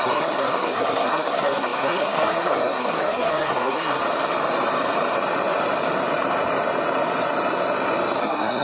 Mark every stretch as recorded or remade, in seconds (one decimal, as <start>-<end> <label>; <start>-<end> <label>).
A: 0.0-4.0 remade; 4.0-8.2 recorded; 8.2-8.6 remade